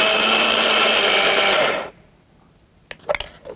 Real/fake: real